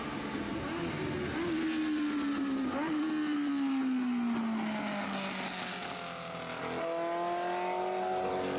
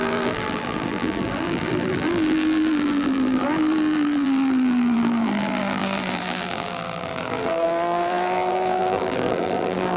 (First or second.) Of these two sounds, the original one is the first